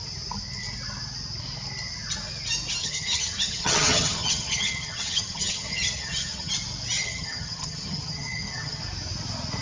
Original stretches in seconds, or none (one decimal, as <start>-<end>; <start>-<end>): 0.0-2.8; 6.5-7.0; 8.8-9.6